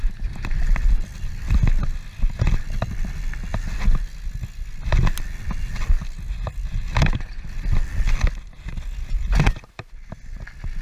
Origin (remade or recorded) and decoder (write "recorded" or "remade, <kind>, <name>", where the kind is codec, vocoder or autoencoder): recorded